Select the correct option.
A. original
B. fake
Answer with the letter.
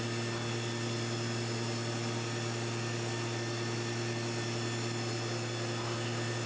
A